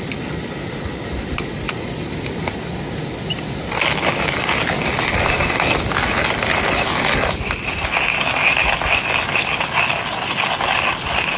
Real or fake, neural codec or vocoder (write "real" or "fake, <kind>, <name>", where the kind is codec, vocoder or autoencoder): real